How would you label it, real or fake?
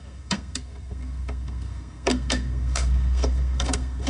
fake